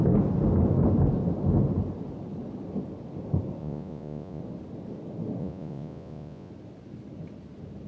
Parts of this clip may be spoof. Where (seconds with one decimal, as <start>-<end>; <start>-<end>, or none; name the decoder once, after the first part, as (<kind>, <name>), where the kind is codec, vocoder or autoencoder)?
3.6-4.4 (vocoder, Vocos); 5.4-6.5